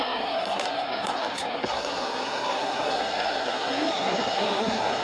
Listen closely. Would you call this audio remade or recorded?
remade